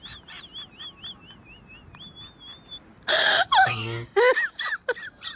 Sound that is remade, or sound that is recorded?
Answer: recorded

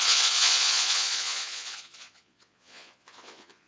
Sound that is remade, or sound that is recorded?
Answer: remade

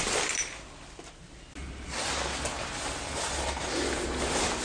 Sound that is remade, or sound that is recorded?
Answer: recorded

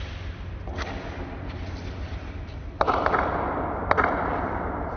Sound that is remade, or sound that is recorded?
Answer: recorded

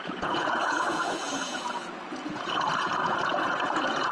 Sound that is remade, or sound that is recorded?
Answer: remade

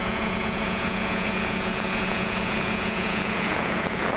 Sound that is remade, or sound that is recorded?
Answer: remade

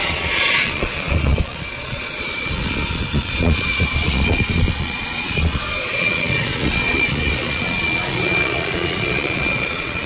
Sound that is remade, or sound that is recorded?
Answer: remade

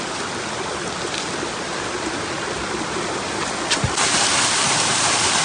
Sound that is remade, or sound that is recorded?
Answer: recorded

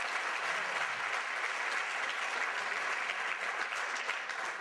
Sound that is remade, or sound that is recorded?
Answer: recorded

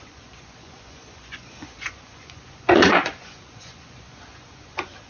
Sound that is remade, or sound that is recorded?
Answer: remade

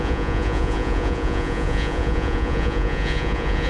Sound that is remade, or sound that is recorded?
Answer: remade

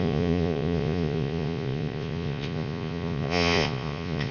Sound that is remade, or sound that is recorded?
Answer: remade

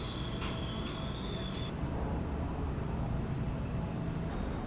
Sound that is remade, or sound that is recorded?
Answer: recorded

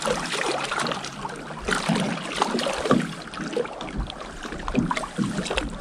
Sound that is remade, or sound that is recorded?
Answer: recorded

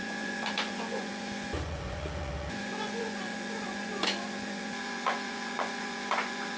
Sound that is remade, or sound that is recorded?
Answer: remade